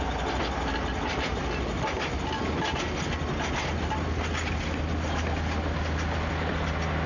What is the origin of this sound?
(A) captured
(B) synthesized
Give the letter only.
A